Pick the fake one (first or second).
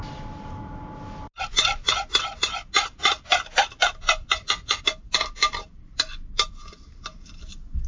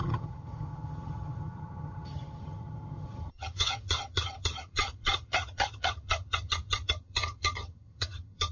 second